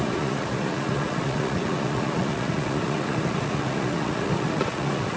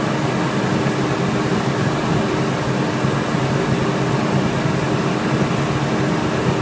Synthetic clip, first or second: first